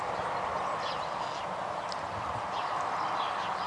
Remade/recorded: recorded